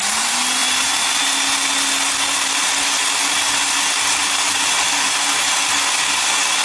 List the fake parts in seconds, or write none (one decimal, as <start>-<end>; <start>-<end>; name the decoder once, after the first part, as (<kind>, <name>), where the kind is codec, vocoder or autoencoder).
0.6-1.2 (vocoder, BigVGAN v2); 4.2-5.2